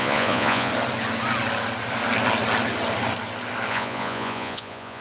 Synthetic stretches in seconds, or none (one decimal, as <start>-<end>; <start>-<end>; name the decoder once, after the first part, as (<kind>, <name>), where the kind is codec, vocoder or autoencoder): 0.0-0.7 (vocoder, Vocos); 3.7-5.0